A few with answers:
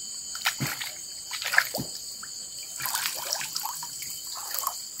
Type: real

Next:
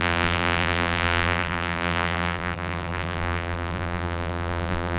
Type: fake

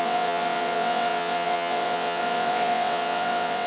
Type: fake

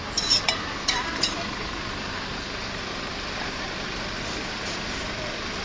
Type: fake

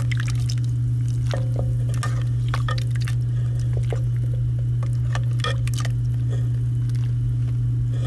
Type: real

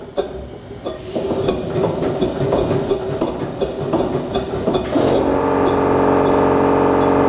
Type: real